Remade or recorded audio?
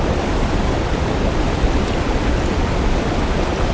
remade